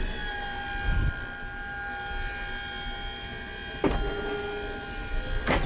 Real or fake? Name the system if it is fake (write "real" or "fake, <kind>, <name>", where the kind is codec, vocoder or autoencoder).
real